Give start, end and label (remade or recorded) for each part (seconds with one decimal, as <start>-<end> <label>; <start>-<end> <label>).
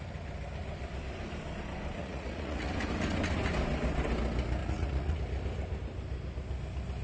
0.0-2.0 recorded; 2.0-2.7 remade; 2.7-4.6 recorded; 4.6-5.2 remade; 5.2-7.0 recorded